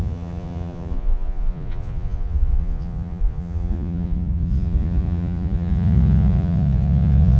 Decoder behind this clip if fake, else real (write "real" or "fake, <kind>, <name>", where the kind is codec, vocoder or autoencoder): fake, vocoder, Vocos